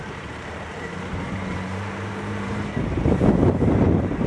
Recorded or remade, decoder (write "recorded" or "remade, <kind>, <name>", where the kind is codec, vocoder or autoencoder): remade, vocoder, BigVGAN v2